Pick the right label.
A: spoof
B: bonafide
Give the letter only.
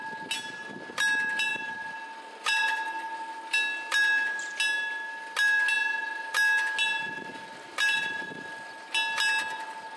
B